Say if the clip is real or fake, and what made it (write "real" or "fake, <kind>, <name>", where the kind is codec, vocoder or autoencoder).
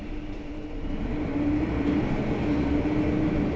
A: fake, vocoder, BigVGAN v2